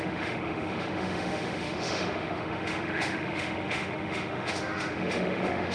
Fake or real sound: fake